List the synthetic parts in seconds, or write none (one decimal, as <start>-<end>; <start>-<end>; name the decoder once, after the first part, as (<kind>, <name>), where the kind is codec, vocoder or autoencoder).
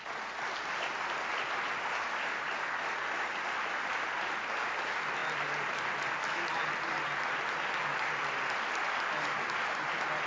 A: none